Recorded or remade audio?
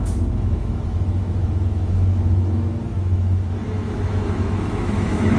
remade